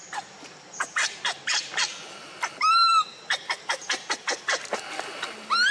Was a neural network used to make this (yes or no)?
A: no